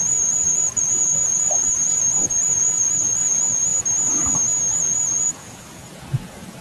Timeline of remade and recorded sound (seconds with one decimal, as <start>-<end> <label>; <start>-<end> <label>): 0.0-3.7 remade; 3.7-4.8 recorded; 4.8-6.6 remade